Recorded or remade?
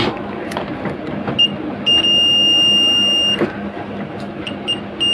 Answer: recorded